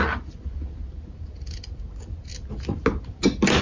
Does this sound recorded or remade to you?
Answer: recorded